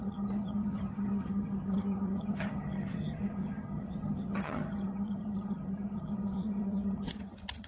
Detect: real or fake fake